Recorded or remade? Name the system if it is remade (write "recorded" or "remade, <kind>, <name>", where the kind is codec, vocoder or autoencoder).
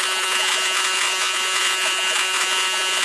remade, vocoder, Vocos